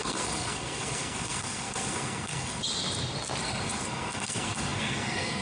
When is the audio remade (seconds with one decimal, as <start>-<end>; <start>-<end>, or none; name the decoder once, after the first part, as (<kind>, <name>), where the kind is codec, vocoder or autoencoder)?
0.0-2.6 (codec, SNAC); 3.4-5.4